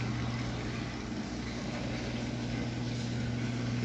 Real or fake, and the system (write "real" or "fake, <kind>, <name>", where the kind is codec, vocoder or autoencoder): real